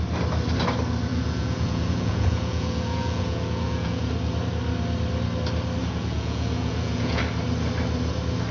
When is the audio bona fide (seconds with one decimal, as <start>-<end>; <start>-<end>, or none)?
0.0-1.1; 4.1-5.8; 7.2-8.5